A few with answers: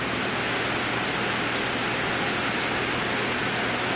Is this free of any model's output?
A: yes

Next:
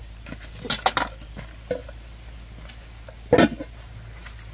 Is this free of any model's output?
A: yes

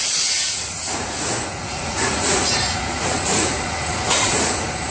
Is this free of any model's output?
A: no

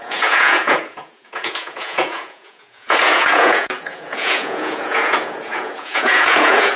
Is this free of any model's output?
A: no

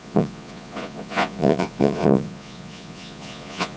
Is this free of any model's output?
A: no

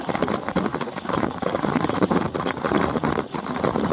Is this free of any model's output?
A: no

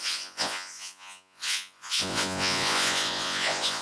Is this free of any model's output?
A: no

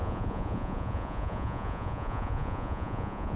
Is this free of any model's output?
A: no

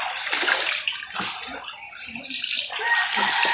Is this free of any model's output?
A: yes